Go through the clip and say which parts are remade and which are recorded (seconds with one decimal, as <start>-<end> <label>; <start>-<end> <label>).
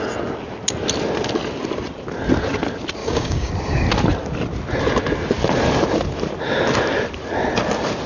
0.0-3.0 recorded; 3.0-3.5 remade; 3.5-8.1 recorded